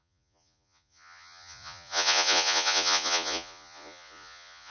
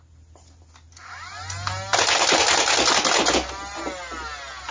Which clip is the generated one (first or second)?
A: first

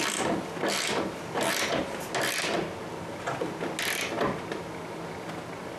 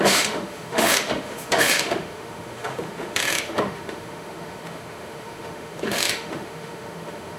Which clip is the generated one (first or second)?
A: second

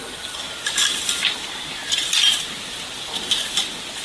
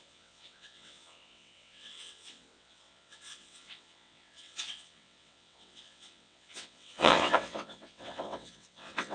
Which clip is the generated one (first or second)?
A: second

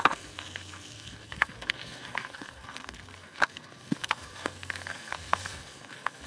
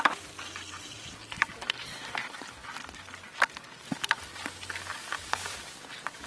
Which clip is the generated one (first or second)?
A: first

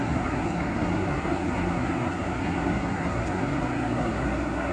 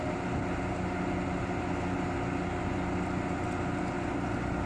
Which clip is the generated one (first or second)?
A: first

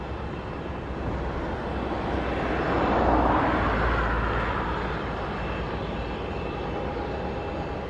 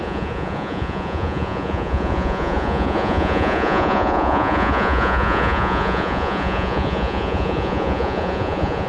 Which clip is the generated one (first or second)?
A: second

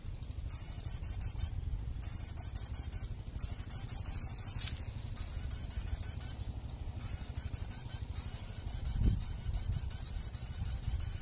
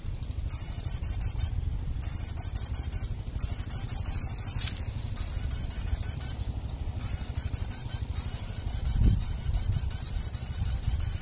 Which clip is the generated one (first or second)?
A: second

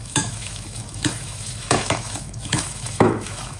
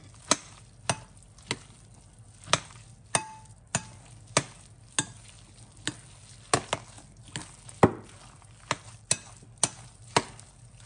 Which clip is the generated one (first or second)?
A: first